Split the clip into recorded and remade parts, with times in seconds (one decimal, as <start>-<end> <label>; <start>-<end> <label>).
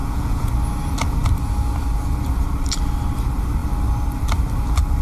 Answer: 0.0-0.5 remade; 0.5-5.0 recorded